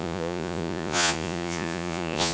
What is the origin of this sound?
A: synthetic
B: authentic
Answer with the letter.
A